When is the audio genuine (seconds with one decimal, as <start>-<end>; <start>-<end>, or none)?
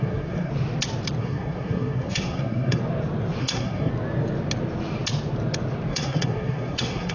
0.5-1.2; 2.8-3.4; 3.9-5.9